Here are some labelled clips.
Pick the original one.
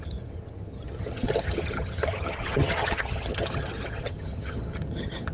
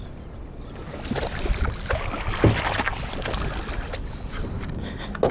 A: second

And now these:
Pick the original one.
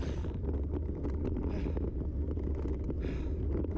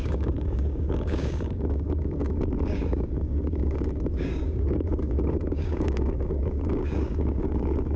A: first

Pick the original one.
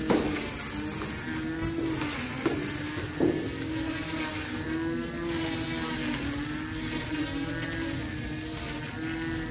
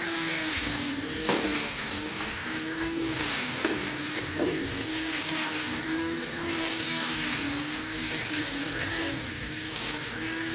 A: first